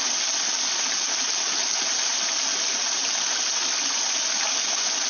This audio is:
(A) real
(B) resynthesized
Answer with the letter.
A